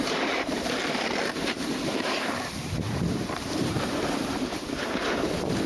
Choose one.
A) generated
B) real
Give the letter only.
A